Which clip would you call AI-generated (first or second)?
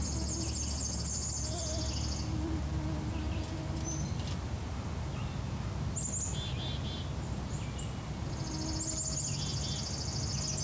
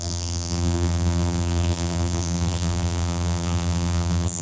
second